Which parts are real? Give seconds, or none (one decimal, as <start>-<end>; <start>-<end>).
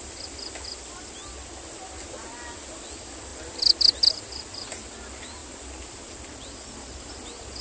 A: 0.0-7.6